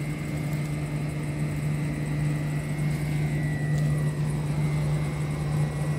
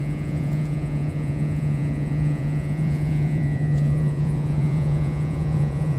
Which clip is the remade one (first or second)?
second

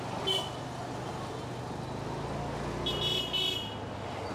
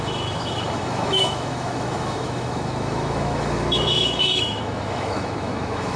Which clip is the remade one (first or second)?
second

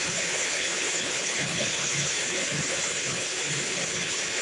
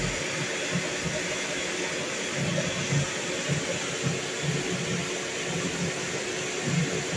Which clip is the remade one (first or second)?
first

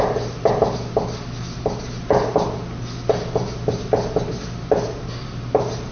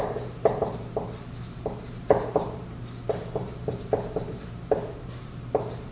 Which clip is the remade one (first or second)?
second